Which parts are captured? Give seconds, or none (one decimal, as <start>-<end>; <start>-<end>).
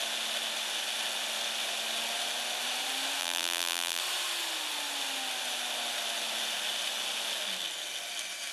0.0-3.2; 4.0-8.5